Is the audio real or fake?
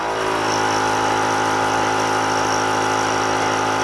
real